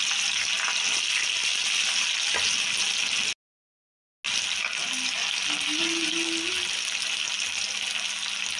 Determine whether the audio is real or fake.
real